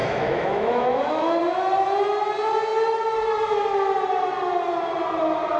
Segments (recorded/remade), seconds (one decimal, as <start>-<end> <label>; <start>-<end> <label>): 0.0-1.4 remade; 1.4-5.6 recorded